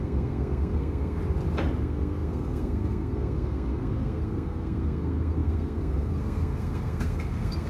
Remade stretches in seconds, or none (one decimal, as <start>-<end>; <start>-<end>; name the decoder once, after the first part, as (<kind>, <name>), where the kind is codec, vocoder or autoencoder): 0.0-1.2 (codec, SNAC); 1.8-7.7

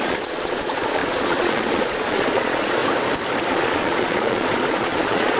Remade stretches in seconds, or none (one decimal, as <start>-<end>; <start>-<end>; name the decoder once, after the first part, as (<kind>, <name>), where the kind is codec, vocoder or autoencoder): 0.0-2.8 (vocoder, Vocos); 3.5-5.4

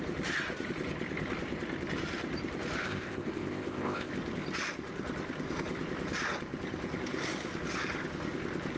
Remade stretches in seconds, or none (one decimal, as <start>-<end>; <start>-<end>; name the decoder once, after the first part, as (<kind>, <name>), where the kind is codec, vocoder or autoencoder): 2.8-4.1 (codec, ZipCodec)

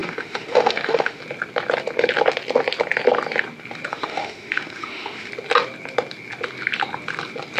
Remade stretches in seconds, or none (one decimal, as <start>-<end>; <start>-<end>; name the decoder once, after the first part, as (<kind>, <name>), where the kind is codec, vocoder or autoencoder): 0.0-1.2 (autoencoder, DAC-VAE); 3.9-5.3

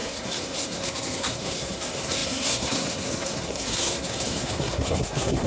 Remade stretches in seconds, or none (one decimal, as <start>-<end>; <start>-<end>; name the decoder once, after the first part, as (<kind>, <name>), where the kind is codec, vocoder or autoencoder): 0.0-5.5 (codec, SNAC)

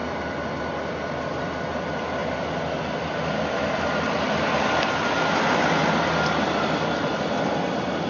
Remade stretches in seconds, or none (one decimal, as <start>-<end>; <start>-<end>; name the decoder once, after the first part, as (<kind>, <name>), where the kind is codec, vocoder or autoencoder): none